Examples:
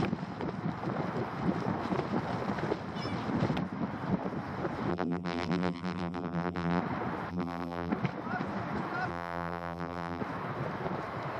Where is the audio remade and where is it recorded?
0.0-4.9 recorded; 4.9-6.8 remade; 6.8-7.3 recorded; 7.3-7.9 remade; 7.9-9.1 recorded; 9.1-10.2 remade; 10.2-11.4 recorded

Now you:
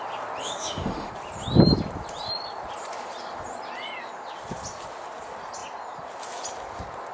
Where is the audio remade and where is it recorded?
0.0-0.4 recorded; 0.4-1.1 remade; 1.1-7.1 recorded